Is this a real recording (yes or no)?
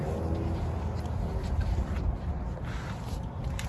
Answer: yes